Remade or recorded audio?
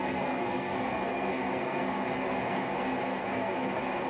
remade